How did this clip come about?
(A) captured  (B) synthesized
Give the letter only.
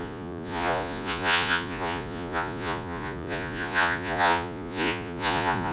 B